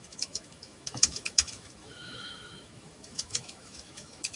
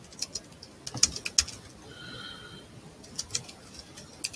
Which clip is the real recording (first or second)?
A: second